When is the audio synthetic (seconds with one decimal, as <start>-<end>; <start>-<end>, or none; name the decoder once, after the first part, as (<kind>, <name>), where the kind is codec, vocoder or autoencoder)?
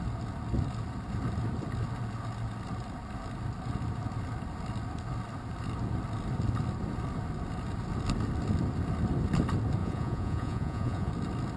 9.8-11.1 (vocoder, Vocos)